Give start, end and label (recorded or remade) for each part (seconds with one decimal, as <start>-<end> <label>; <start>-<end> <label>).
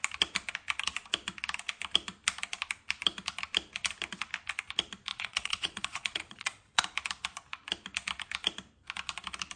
0.0-5.1 recorded; 5.1-6.8 remade; 6.8-9.6 recorded